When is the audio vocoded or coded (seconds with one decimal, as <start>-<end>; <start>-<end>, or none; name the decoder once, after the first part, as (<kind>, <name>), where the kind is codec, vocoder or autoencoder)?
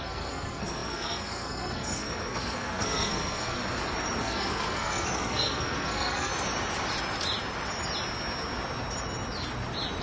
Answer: 0.0-3.6 (codec, SNAC); 4.2-6.3